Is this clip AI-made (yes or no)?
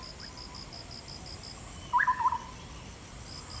no